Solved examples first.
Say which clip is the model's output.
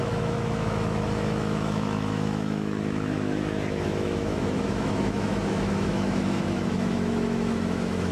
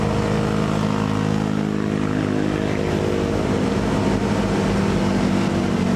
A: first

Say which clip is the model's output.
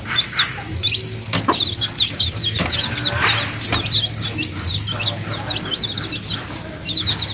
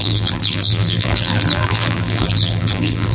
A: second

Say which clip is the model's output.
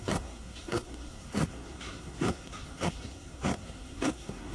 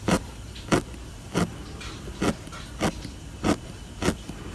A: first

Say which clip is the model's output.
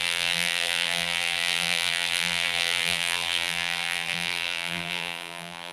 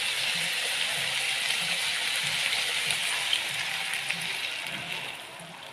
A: first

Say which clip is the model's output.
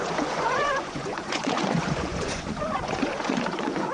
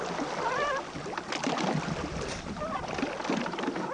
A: first